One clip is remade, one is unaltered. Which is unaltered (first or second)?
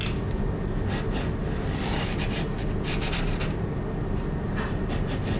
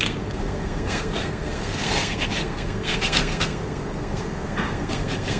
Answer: first